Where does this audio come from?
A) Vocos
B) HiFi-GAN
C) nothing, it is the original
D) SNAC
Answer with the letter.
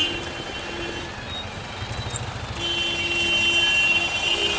C